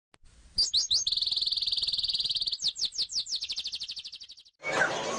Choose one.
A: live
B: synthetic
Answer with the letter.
A